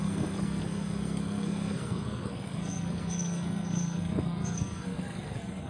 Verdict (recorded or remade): remade